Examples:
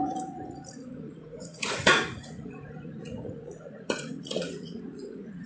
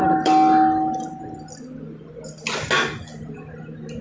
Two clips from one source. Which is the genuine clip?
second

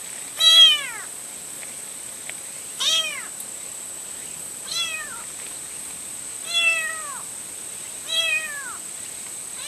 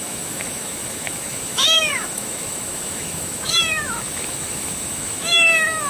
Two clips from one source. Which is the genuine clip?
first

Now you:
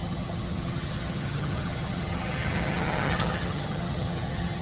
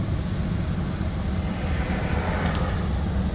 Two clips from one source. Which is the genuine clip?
second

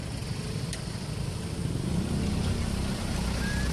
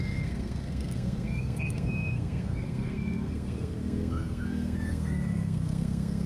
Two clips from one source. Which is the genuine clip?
first